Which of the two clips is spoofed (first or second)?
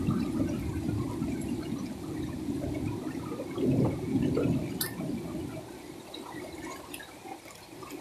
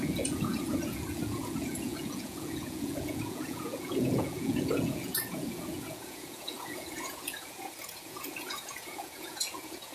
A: second